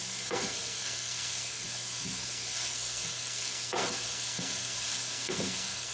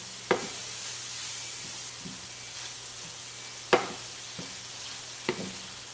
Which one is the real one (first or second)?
second